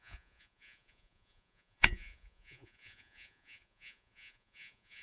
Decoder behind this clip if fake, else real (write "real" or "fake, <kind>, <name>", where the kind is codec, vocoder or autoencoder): fake, vocoder, Vocos